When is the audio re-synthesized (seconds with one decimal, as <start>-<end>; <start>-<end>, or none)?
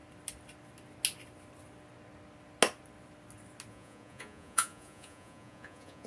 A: 3.7-6.1